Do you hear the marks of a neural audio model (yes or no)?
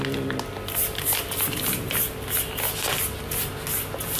no